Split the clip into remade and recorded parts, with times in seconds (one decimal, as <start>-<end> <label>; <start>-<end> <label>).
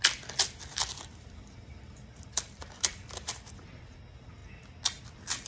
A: 0.0-0.7 recorded; 0.7-4.0 remade; 4.0-5.5 recorded